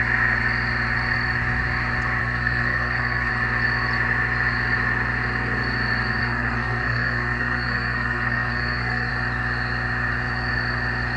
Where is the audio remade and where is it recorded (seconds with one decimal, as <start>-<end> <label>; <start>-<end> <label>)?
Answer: 0.0-2.2 recorded; 2.2-3.3 remade; 3.3-6.2 recorded; 6.2-9.1 remade; 9.1-11.2 recorded